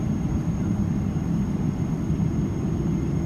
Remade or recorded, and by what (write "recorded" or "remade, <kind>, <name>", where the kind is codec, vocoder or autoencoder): remade, vocoder, BigVGAN v2